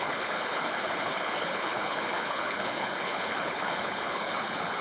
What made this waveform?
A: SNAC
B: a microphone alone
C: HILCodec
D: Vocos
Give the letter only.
C